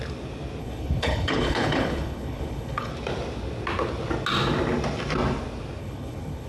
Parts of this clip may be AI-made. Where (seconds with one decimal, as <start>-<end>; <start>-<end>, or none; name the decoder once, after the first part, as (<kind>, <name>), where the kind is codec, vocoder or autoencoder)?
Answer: 0.6-2.9 (codec, HILCodec); 5.8-6.5